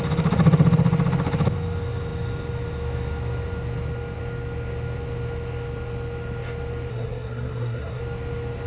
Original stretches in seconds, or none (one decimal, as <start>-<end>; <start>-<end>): 0.0-6.9; 8.0-8.7